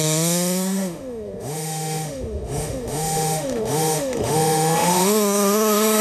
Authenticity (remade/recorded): remade